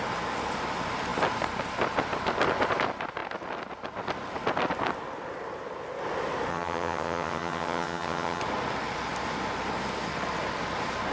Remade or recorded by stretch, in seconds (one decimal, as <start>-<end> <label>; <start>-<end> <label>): 0.0-6.5 recorded; 6.5-8.4 remade; 8.4-11.1 recorded